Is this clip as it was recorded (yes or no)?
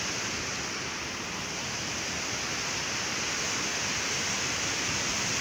yes